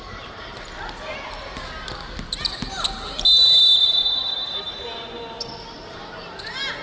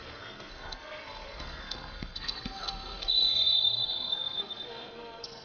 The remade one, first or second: second